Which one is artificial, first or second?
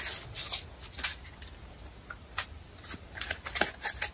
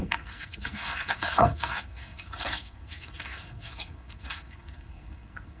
second